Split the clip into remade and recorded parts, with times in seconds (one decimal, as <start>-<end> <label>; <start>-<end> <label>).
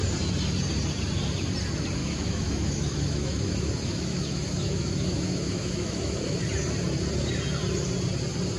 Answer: 0.0-2.0 recorded; 2.0-6.4 remade; 6.4-8.6 recorded